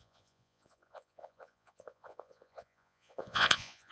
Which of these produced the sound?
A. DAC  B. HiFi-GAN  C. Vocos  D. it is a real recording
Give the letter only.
C